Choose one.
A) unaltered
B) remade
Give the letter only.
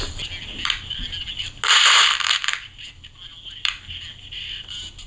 A